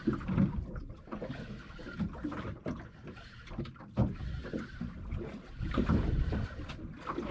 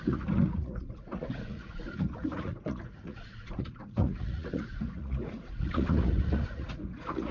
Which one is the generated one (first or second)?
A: second